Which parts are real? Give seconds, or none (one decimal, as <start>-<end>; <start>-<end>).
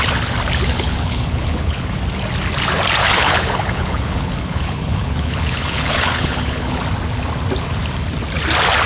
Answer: 0.0-0.7; 1.9-3.0; 6.8-8.9